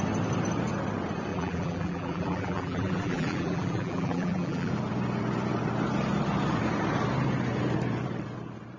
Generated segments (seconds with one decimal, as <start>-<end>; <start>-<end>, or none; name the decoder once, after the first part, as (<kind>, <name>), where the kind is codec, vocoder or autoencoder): 1.3-4.7 (vocoder, BigVGAN v2)